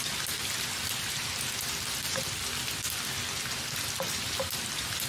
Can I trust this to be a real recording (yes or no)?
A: yes